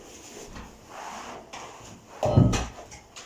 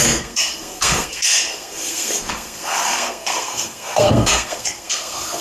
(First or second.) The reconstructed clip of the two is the second